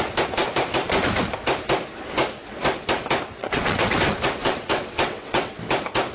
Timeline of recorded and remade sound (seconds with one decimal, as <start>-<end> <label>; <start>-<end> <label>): 0.0-3.4 recorded; 3.4-5.5 remade; 5.5-6.1 recorded